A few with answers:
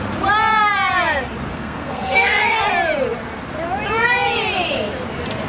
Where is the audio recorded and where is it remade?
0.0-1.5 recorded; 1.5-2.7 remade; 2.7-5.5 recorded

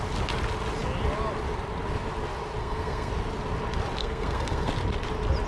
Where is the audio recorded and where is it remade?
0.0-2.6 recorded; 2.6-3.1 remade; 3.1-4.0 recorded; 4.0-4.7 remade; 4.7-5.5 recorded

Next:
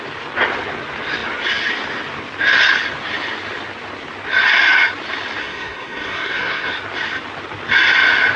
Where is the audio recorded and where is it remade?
0.0-5.4 recorded; 5.4-6.7 remade; 6.7-8.4 recorded

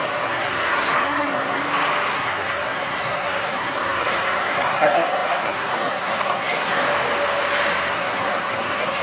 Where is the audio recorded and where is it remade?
0.0-1.6 remade; 1.6-2.1 recorded; 2.1-6.8 remade; 6.8-7.9 recorded; 7.9-9.0 remade